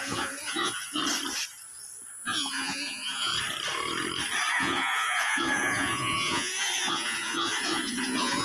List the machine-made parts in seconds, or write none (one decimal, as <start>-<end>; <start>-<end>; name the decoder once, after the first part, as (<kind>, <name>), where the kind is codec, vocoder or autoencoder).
0.0-1.0 (vocoder, Vocos); 2.1-3.3; 4.5-8.4